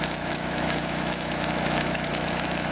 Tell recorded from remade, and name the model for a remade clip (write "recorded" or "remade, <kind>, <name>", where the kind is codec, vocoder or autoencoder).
remade, autoencoder, DAC-VAE